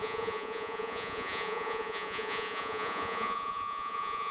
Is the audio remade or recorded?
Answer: remade